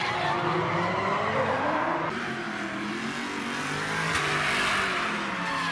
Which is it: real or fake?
real